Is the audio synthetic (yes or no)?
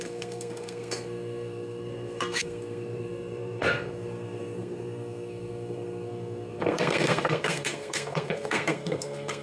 yes